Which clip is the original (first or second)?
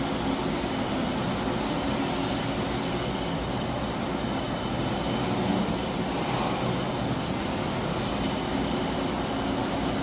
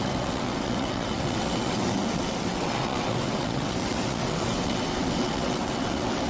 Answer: first